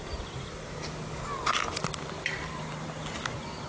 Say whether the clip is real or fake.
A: real